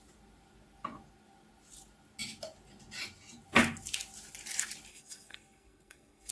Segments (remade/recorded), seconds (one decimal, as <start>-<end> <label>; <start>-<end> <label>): 0.0-4.9 recorded; 4.9-6.3 remade